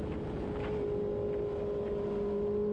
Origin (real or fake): real